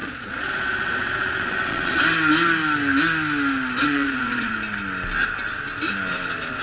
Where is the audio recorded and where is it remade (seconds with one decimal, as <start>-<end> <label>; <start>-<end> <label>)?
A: 0.0-2.0 remade; 2.0-3.8 recorded; 3.8-4.5 remade; 4.5-6.6 recorded